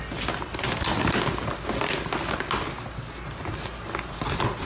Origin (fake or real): real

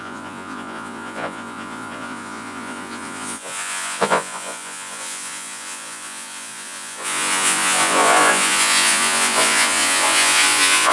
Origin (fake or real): fake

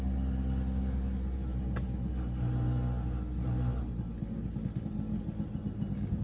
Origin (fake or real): real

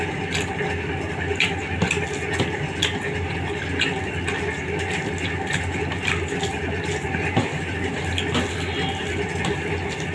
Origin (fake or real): real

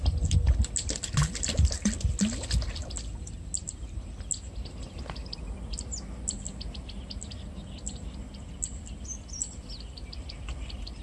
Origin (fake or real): real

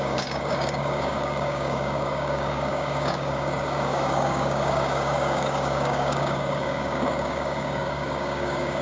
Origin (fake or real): fake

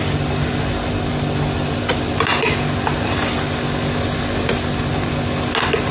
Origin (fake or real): real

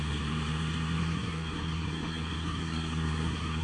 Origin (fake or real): fake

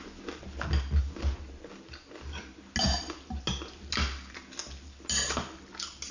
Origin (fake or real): real